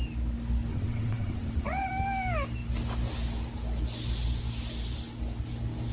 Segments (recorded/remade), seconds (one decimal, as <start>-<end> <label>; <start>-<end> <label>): 0.0-0.7 recorded; 0.7-1.9 remade; 1.9-5.9 recorded